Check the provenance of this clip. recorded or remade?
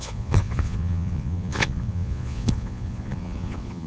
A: remade